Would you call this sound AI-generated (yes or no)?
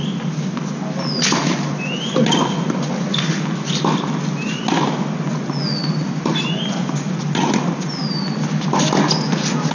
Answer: no